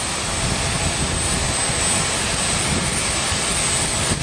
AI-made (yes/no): no